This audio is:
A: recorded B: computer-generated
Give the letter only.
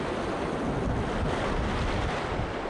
A